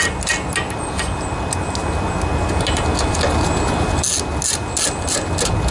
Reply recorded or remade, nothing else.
recorded